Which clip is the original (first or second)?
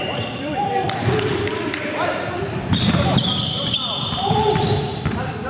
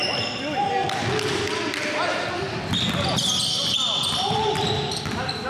second